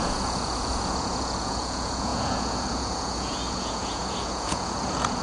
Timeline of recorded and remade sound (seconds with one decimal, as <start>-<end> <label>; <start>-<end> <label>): 0.0-5.2 remade